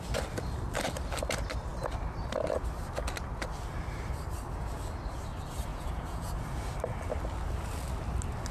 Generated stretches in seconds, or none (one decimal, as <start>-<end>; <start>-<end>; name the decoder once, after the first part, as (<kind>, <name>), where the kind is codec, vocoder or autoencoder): 5.7-6.3 (vocoder, Vocos)